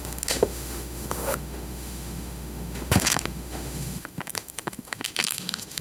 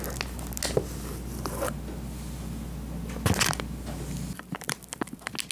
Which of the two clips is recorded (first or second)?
second